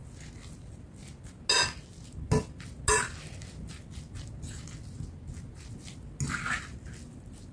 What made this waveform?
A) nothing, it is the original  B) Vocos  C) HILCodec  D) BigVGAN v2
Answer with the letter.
A